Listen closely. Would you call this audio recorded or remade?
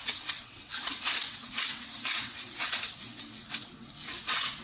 remade